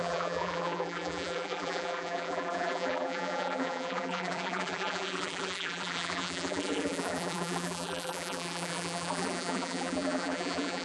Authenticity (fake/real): fake